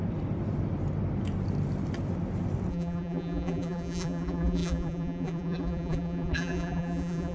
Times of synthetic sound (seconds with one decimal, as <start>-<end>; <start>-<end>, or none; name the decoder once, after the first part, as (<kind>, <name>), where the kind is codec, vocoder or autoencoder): 2.7-7.3 (vocoder, BigVGAN v2)